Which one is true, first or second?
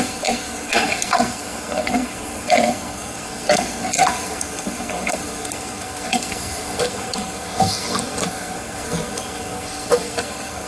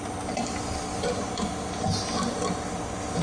second